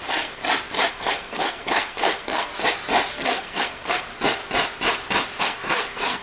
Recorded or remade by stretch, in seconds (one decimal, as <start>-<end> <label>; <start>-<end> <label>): 0.0-0.4 remade; 0.4-0.9 recorded; 0.9-2.5 remade; 2.5-3.1 recorded; 3.1-4.1 remade; 4.1-5.4 recorded; 5.4-6.2 remade